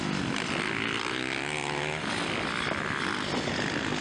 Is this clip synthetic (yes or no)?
no